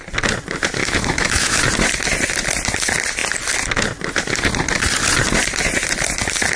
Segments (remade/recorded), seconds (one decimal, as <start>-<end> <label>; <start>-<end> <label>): 0.0-0.8 recorded; 0.8-1.6 remade; 1.6-6.6 recorded